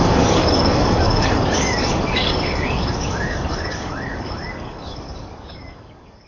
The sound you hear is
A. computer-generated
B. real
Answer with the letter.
A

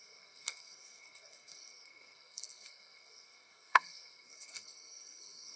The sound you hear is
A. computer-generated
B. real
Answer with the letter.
A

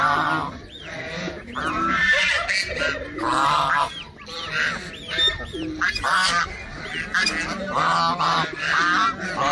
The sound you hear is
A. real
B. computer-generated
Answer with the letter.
A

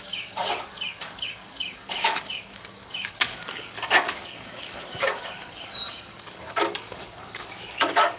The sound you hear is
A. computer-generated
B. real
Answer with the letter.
A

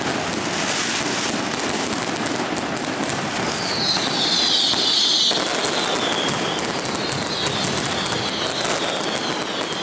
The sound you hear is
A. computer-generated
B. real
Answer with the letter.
B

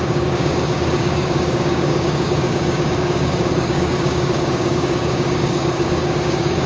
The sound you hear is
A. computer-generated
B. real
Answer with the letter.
A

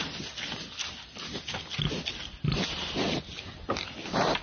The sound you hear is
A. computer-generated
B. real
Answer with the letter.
B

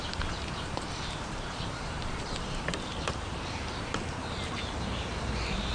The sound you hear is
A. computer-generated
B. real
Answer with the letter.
A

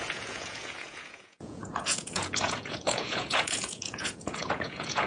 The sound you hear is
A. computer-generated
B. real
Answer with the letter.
A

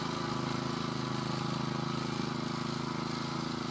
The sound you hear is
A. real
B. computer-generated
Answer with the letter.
A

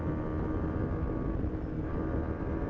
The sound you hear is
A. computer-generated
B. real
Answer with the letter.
B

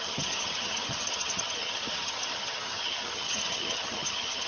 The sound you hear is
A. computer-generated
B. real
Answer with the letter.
A